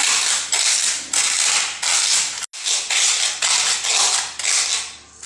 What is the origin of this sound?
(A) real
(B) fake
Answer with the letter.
A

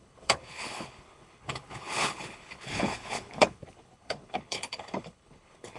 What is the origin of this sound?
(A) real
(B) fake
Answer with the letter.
B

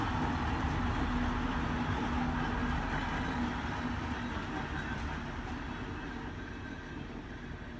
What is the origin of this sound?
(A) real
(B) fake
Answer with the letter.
A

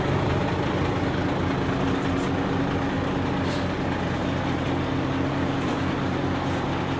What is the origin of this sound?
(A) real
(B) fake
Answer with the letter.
A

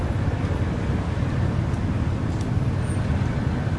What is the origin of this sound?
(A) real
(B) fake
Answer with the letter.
A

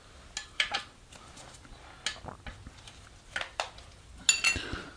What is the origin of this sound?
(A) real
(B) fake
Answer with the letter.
A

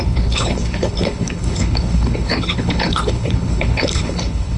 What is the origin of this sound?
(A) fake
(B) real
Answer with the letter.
A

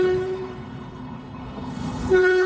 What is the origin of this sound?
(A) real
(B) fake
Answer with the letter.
B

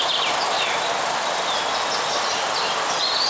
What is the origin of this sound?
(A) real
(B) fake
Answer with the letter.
B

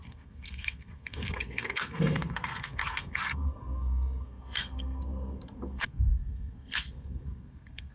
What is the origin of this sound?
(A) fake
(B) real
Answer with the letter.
A